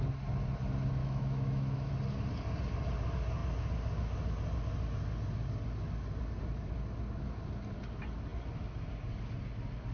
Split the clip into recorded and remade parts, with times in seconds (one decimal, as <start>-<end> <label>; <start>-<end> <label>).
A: 0.0-1.0 recorded; 1.0-1.9 remade; 1.9-9.9 recorded

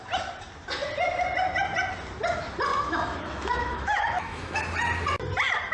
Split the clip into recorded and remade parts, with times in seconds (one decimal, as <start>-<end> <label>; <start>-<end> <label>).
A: 0.0-2.7 recorded; 2.7-4.6 remade; 4.6-5.7 recorded

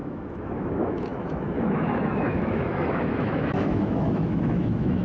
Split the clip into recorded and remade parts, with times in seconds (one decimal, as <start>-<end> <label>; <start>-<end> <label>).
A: 0.0-5.0 remade

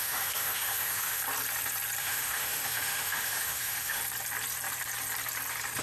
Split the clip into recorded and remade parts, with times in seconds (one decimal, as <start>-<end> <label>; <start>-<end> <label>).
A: 0.0-1.2 remade; 1.2-2.0 recorded; 2.0-4.0 remade; 4.0-5.8 recorded